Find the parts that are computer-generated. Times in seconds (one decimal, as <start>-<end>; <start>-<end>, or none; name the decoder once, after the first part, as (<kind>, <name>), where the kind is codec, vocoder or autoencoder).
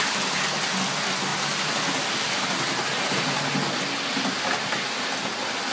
none